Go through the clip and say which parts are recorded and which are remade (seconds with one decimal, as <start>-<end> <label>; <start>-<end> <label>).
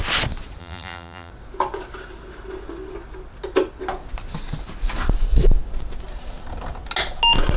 0.0-0.6 recorded; 0.6-1.3 remade; 1.3-7.6 recorded